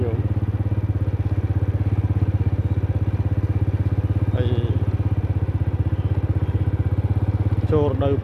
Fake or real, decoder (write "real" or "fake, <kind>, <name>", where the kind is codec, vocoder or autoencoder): real